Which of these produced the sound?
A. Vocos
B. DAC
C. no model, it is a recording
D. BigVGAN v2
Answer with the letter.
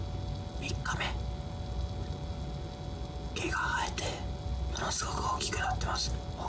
C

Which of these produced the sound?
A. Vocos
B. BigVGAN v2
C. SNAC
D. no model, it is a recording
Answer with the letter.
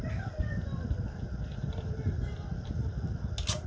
D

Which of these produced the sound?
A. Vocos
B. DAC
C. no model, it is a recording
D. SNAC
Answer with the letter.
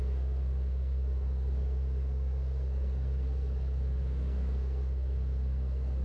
D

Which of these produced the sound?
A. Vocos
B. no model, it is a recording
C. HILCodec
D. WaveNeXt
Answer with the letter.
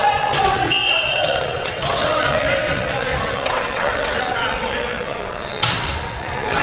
D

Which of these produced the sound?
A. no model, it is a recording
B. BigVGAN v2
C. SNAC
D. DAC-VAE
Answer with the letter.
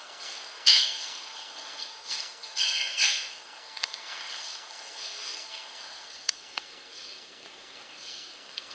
C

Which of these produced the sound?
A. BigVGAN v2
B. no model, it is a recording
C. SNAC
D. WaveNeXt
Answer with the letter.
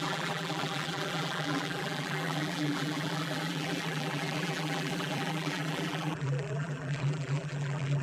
A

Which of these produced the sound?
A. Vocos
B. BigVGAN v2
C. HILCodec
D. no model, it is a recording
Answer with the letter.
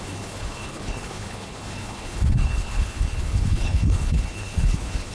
C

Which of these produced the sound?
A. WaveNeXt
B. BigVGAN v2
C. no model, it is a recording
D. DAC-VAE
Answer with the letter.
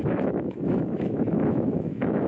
D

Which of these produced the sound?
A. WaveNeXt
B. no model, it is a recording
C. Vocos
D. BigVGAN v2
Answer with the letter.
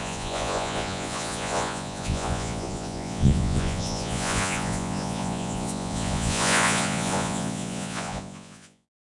C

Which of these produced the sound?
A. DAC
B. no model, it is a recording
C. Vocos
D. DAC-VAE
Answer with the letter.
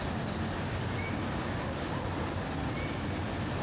B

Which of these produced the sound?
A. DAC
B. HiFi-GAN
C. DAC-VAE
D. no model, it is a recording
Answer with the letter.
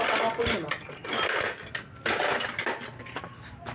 D